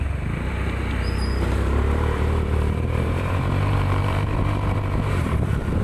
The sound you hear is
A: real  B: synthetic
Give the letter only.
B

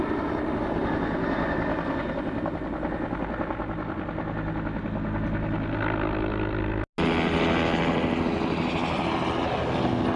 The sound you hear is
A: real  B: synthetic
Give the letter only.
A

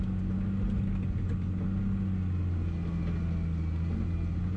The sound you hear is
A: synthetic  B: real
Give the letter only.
B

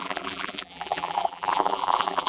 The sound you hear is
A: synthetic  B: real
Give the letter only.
A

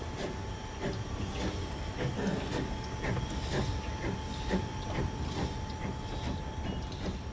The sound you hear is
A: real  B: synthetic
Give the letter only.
A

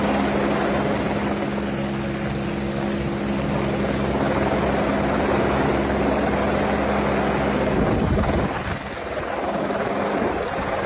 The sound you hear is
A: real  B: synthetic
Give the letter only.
A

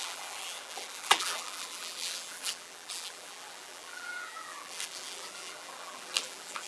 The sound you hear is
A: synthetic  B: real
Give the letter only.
A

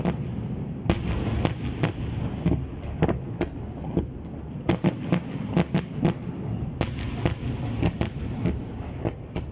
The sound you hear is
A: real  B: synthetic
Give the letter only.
A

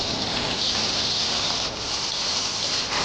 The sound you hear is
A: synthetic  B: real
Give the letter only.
A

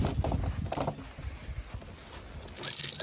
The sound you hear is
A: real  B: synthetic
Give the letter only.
A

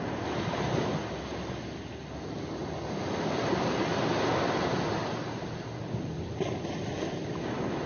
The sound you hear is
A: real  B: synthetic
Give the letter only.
A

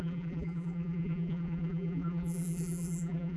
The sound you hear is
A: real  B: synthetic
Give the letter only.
B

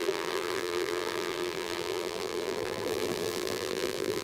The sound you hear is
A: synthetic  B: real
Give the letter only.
A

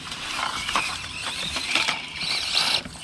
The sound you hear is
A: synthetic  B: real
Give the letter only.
A